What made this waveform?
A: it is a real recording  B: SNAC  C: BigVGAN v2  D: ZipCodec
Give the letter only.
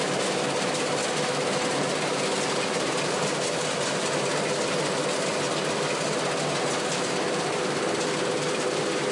A